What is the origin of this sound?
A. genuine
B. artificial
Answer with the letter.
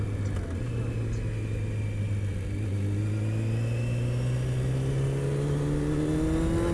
A